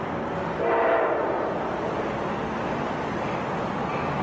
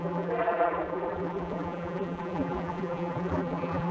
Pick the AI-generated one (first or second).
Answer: second